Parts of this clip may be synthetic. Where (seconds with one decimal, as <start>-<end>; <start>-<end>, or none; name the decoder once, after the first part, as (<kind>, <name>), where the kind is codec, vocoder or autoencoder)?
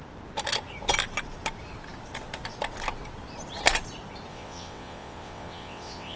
4.3-6.2 (vocoder, WaveNeXt)